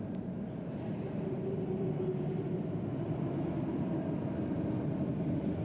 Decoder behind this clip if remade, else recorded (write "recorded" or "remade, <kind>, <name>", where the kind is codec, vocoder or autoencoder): recorded